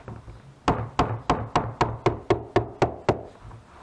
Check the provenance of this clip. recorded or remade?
recorded